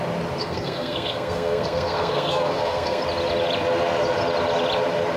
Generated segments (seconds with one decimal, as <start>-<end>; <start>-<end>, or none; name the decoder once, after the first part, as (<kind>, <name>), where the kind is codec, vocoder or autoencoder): 0.4-3.0 (codec, SNAC)